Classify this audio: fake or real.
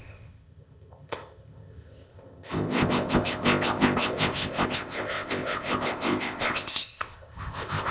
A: fake